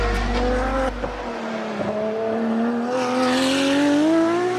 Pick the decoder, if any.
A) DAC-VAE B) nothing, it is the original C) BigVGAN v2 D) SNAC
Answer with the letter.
B